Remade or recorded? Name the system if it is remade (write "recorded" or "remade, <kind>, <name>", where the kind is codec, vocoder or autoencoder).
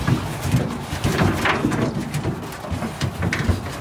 recorded